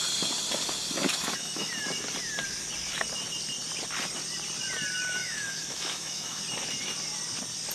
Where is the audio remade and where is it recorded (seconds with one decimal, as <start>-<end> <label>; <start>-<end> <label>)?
0.0-1.1 recorded; 1.1-1.7 remade; 1.7-5.2 recorded; 5.2-6.4 remade; 6.4-7.7 recorded